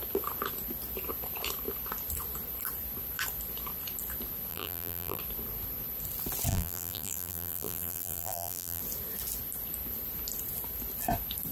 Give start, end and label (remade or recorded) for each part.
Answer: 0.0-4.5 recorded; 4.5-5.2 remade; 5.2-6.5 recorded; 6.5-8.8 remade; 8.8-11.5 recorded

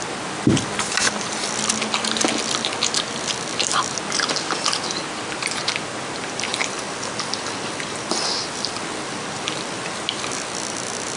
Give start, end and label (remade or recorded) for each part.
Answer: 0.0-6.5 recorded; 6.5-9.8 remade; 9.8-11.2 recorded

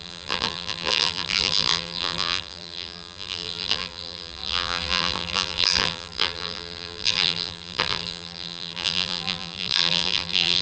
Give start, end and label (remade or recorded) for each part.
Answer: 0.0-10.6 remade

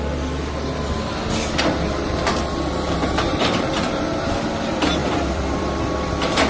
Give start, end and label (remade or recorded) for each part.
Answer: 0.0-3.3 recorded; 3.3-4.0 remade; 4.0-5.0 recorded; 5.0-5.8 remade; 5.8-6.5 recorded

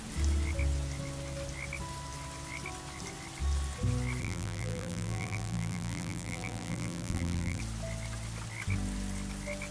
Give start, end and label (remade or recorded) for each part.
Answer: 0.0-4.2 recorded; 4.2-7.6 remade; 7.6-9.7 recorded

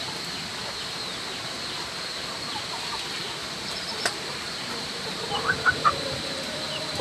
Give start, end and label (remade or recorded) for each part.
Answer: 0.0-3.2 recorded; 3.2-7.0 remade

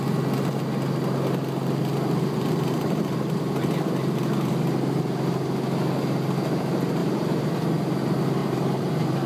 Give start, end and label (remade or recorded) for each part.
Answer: 0.0-1.9 recorded; 1.9-4.5 remade; 4.5-7.0 recorded; 7.0-7.5 remade; 7.5-8.4 recorded; 8.4-9.3 remade

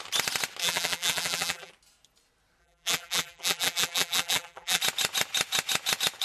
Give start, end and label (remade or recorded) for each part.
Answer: 0.0-0.6 recorded; 0.6-1.7 remade; 1.7-2.6 recorded; 2.6-4.8 remade; 4.8-6.2 recorded